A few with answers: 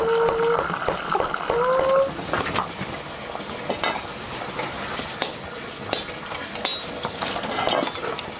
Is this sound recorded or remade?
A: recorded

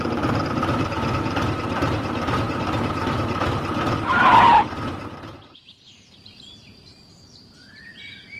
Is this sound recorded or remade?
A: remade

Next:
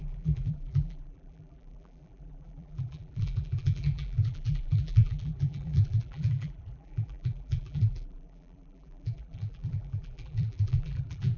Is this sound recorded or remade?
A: remade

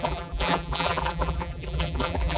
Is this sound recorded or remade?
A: remade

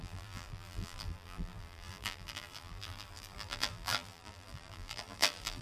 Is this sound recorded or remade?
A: remade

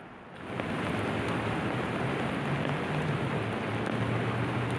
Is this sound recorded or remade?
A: recorded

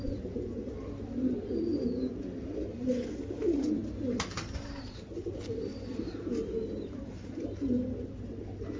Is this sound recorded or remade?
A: recorded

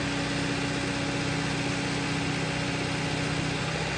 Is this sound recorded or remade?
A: recorded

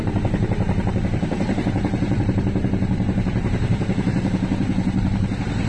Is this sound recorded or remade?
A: remade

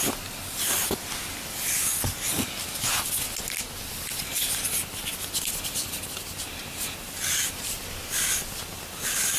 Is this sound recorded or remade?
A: recorded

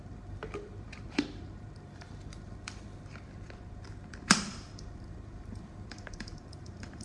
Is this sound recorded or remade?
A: remade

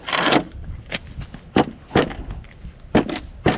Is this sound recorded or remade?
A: recorded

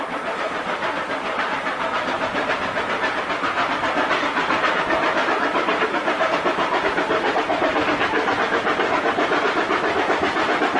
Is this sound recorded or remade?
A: remade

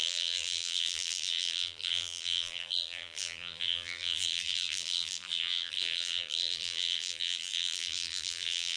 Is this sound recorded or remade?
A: remade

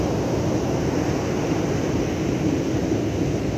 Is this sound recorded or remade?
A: recorded